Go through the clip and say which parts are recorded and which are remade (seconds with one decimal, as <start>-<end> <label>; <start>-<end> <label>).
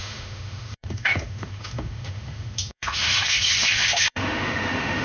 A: 0.0-5.0 remade